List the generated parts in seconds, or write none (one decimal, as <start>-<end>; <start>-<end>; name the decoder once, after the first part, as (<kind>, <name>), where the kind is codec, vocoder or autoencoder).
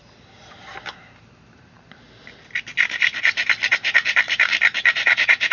0.0-0.7 (vocoder, BigVGAN v2); 3.7-5.5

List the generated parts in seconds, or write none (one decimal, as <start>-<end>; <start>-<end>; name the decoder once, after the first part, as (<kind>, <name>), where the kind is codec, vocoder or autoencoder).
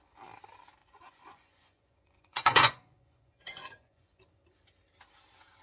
0.8-4.2 (vocoder, Vocos)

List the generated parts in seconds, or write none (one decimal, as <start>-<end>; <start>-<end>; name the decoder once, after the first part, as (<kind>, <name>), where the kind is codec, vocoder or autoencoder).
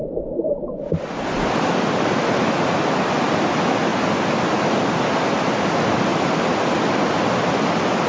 none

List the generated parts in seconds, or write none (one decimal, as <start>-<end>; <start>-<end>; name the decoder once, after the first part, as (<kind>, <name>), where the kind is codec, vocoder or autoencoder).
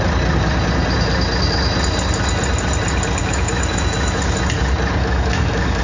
3.2-4.2 (autoencoder, DAC-VAE); 5.0-5.8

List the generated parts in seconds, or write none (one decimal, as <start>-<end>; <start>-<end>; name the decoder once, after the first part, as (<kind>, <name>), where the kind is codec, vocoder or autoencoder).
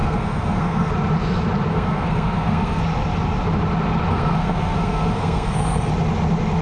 0.0-0.9 (codec, SNAC); 1.7-2.8; 4.1-5.9